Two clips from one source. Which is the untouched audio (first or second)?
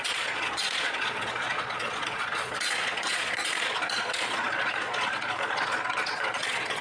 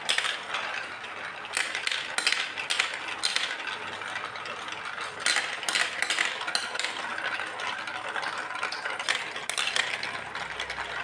second